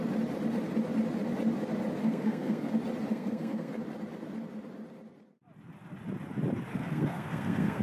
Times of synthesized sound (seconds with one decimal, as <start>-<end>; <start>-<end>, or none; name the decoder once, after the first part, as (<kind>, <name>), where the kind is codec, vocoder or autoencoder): 2.0-2.7 (codec, SNAC); 3.1-3.8; 6.7-7.8